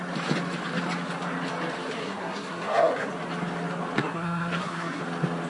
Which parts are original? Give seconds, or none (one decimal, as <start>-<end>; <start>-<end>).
0.0-2.0; 3.1-4.0; 5.0-5.5